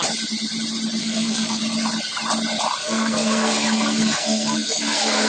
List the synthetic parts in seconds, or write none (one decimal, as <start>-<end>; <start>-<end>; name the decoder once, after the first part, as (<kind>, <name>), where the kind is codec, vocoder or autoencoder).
1.0-1.6 (codec, SNAC); 2.8-5.3